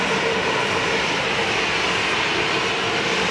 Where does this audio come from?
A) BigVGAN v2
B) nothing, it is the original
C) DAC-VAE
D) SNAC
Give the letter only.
A